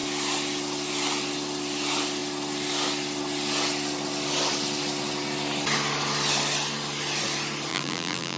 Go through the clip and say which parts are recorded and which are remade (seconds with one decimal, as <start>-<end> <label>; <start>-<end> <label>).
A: 0.0-7.7 recorded; 7.7-8.4 remade